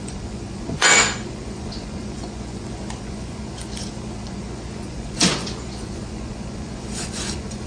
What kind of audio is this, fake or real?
fake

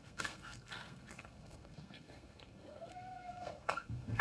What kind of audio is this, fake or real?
fake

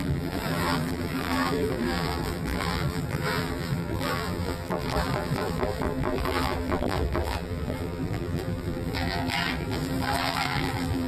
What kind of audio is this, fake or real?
fake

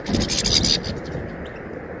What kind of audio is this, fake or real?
real